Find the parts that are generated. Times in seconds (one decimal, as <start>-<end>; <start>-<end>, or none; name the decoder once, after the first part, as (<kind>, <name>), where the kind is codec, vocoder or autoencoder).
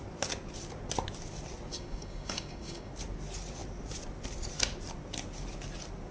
1.7-2.9 (codec, DAC)